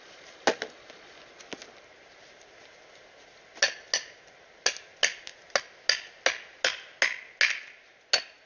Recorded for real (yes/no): yes